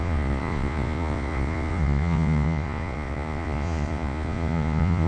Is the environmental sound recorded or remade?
remade